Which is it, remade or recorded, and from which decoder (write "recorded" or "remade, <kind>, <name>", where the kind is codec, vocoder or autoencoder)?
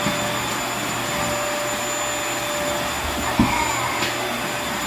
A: recorded